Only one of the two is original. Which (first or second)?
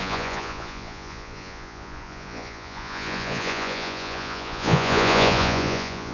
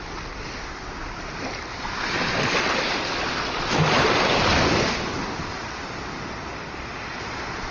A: second